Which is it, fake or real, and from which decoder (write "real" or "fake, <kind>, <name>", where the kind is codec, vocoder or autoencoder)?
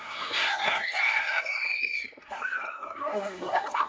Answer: fake, codec, SNAC